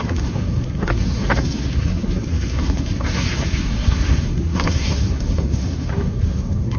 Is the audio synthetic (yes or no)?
yes